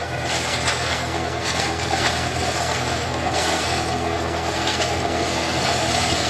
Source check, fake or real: fake